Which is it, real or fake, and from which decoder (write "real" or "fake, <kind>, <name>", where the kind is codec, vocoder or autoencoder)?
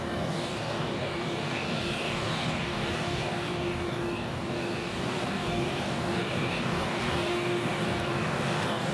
fake, codec, DAC